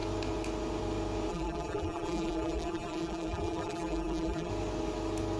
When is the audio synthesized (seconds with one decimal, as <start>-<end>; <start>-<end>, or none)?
1.3-4.5